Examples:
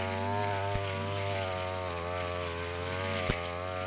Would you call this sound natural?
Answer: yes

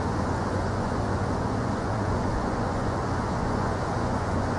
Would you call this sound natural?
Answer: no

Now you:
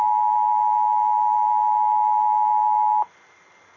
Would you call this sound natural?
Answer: yes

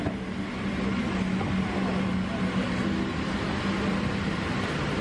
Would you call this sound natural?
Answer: yes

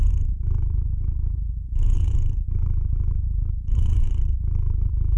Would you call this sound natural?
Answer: no